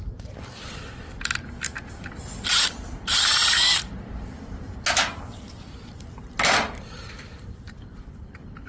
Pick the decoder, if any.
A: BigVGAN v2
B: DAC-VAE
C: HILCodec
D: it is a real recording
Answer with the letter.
A